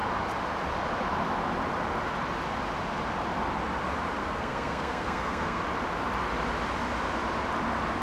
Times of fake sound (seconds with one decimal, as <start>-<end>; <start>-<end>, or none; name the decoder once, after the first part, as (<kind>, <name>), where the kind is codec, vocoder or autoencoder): 4.2-5.6 (codec, SNAC)